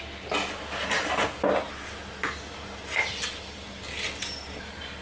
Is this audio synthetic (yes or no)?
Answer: no